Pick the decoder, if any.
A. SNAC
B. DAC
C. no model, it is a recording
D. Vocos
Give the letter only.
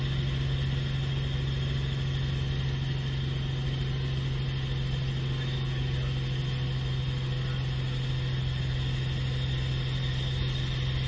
C